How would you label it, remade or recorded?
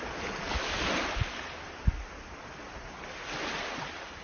recorded